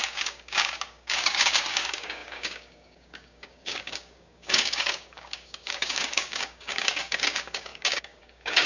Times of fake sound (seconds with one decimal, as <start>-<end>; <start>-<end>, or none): 0.0-8.7